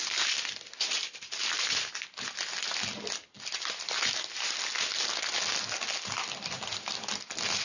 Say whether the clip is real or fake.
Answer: real